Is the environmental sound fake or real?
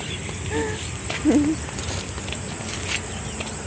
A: real